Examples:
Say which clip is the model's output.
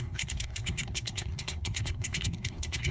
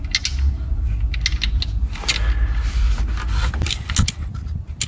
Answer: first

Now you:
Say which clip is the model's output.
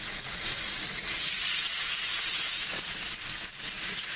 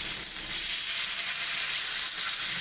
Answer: first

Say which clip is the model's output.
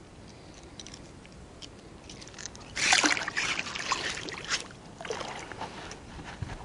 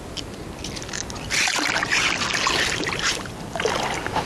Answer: first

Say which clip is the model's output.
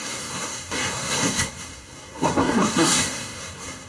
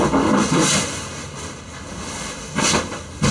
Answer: first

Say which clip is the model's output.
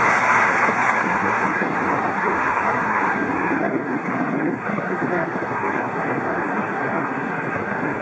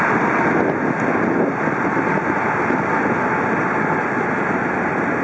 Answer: first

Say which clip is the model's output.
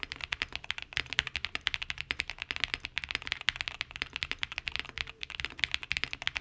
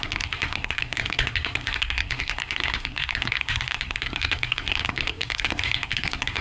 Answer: second